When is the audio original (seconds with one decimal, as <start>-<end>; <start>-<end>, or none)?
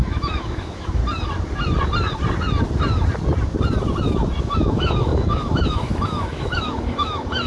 1.0-4.4